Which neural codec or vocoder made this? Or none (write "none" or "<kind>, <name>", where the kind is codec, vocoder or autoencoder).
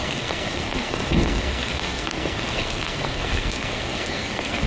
codec, SNAC